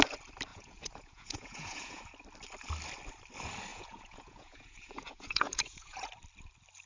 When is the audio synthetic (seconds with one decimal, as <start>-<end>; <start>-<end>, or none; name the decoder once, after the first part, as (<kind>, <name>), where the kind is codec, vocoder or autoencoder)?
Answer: 0.5-2.1 (vocoder, Vocos); 3.7-6.1